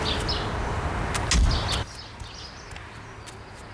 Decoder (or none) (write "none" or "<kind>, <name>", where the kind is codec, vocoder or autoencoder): none